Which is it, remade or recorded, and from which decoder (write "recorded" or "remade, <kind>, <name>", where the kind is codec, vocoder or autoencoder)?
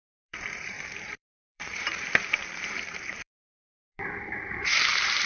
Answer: remade, vocoder, BigVGAN v2